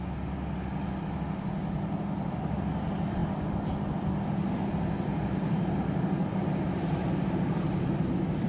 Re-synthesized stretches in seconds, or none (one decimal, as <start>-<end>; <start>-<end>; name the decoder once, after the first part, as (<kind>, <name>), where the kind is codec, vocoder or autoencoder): 5.1-6.0 (vocoder, BigVGAN v2); 6.4-8.1